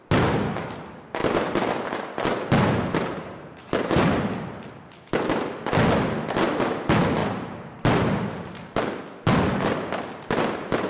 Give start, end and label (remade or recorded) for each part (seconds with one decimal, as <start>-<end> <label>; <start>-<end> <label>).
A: 0.0-1.2 recorded; 1.2-4.2 remade; 4.2-7.2 recorded; 7.2-9.0 remade; 9.0-10.9 recorded